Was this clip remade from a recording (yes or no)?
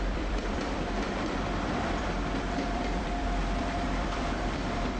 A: yes